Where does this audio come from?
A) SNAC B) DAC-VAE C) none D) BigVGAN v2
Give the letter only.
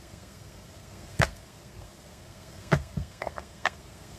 A